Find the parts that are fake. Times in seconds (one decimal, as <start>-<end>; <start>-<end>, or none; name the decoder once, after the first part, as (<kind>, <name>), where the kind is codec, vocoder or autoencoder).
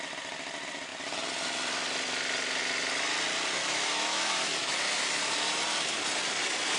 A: 3.6-5.2 (autoencoder, DAC-VAE)